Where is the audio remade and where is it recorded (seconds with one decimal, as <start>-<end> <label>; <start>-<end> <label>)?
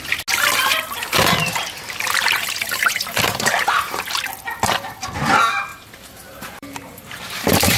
0.0-0.7 recorded; 0.7-4.2 remade; 4.2-5.7 recorded; 5.7-7.8 remade